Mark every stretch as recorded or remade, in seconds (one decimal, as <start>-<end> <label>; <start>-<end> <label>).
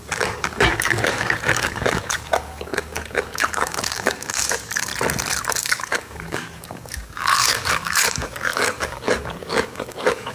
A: 0.0-4.9 remade; 4.9-5.6 recorded; 5.6-10.3 remade